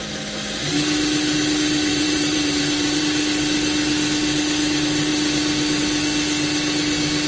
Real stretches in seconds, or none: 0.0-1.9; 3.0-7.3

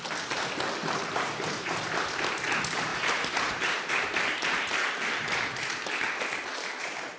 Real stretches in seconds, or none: 0.0-0.8; 1.7-2.9; 3.9-7.2

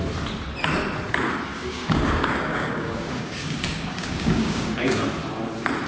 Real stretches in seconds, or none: 0.0-1.5; 5.0-5.9

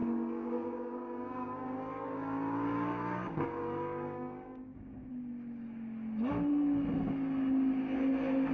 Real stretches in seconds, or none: 5.1-8.5